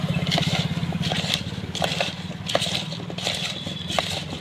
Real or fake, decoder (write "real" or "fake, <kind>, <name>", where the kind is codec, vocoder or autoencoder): fake, vocoder, BigVGAN v2